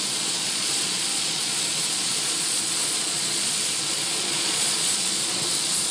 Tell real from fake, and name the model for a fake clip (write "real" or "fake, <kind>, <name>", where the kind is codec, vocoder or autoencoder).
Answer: fake, vocoder, Vocos